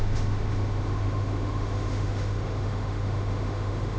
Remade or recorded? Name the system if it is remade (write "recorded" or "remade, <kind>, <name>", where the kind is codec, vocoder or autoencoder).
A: remade, autoencoder, DAC-VAE